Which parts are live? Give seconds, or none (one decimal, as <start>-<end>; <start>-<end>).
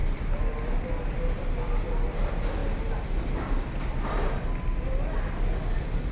0.0-6.1